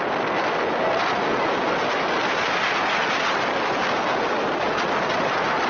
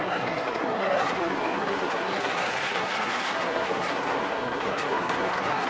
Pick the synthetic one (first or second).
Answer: second